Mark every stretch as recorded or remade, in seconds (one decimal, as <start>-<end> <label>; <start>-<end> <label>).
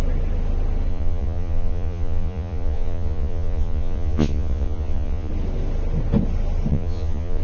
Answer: 0.0-0.9 recorded; 0.9-5.3 remade; 5.3-6.7 recorded; 6.7-7.4 remade